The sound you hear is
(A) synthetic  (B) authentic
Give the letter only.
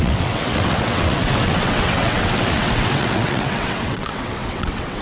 A